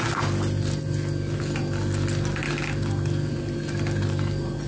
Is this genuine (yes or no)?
yes